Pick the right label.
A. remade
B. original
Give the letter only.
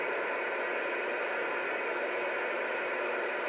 B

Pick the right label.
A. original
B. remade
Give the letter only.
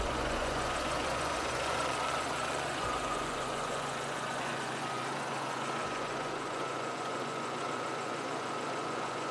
B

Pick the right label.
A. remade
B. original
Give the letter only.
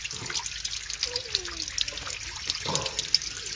B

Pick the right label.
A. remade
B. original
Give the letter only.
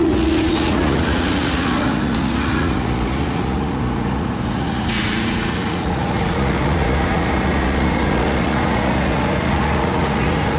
A